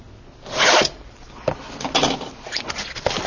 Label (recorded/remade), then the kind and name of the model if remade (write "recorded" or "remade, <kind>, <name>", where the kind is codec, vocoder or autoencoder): recorded